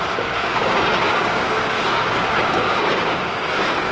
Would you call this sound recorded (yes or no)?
no